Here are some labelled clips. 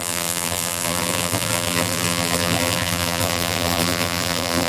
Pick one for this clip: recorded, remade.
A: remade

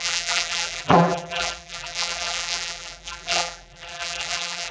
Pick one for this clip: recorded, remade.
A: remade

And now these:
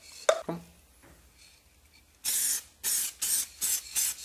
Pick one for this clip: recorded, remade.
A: recorded